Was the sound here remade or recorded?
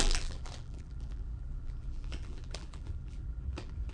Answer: remade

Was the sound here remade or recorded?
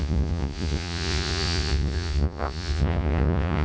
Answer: remade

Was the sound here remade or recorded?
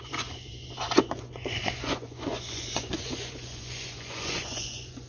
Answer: remade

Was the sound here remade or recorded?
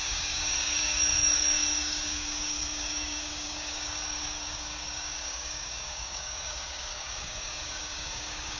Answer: remade